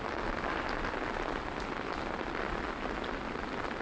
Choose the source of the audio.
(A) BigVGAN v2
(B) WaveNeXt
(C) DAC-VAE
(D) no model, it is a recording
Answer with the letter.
D